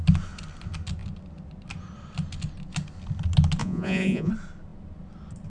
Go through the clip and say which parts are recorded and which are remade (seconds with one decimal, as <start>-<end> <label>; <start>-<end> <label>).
0.0-3.6 recorded; 3.6-4.3 remade; 4.3-5.5 recorded